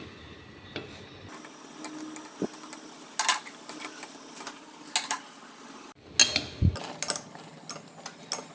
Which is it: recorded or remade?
recorded